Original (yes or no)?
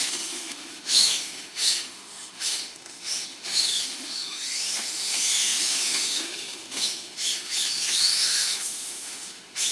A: no